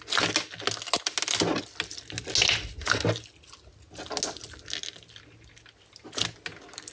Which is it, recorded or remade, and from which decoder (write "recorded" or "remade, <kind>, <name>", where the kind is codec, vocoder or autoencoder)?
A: recorded